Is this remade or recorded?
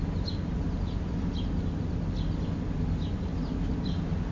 recorded